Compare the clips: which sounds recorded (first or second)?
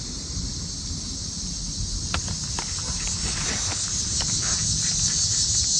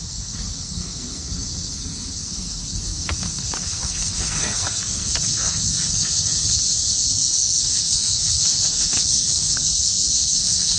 first